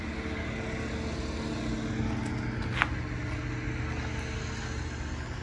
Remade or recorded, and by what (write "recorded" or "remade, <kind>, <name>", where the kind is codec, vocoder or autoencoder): recorded